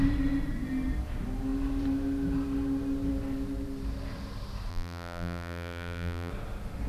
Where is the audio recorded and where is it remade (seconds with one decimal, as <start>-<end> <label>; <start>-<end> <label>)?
0.0-4.7 recorded; 4.7-6.3 remade; 6.3-6.9 recorded